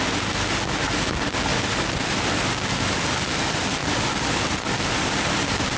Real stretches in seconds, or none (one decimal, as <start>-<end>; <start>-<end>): 0.0-3.8; 4.6-5.8